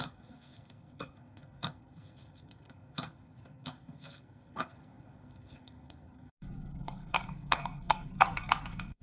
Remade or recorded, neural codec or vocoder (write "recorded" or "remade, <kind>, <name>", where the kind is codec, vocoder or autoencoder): remade, codec, SNAC